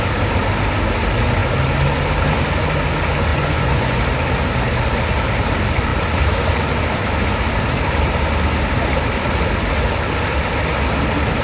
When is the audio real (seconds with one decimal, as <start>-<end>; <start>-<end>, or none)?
0.0-3.3; 4.0-11.4